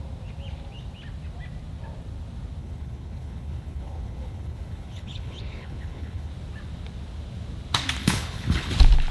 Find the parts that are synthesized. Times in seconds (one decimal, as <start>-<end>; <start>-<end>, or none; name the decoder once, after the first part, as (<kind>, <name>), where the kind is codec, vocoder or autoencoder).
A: 2.6-6.3 (codec, HILCodec); 8.0-8.7